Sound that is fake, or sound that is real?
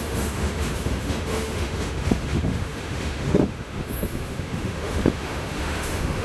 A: fake